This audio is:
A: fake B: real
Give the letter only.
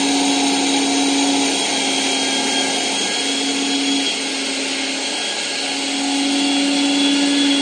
B